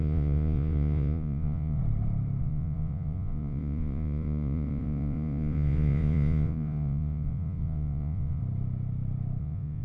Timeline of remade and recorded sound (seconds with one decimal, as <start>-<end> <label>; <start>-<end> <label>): 0.0-1.8 remade; 1.8-2.4 recorded; 2.4-8.4 remade; 8.4-9.4 recorded; 9.4-9.8 remade